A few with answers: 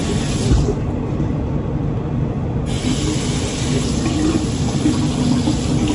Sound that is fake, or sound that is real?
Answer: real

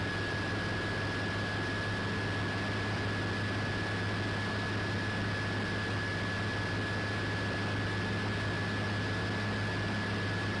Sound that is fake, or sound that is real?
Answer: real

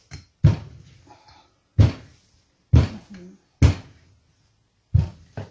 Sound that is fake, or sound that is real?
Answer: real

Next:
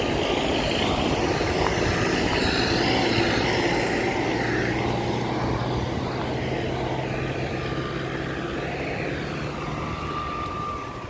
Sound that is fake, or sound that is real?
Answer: real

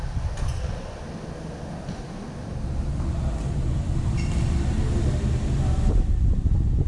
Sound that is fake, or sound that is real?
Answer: real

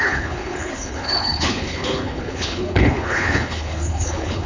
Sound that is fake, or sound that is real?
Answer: fake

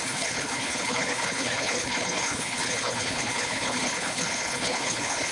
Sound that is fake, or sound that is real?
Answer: fake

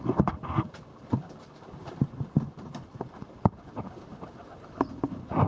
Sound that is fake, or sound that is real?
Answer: real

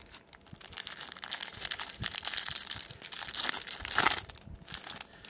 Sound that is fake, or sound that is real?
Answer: real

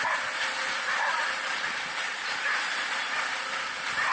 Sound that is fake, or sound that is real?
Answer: real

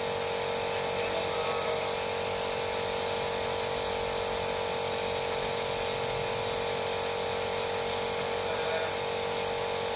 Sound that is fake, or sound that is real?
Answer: real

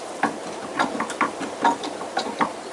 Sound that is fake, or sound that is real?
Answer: real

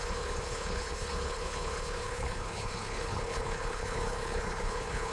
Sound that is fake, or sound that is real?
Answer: fake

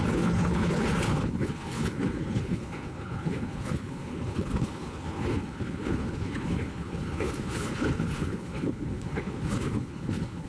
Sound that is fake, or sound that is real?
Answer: fake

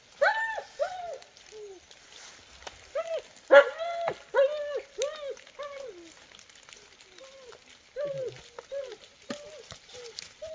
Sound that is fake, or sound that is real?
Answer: real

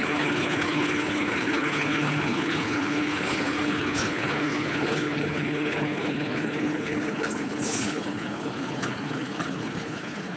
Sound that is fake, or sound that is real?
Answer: fake